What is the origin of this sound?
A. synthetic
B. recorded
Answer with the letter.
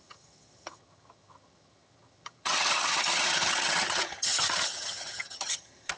A